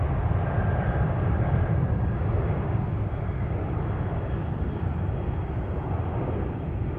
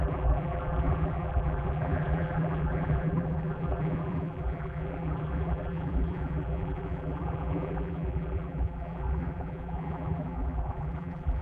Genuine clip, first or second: first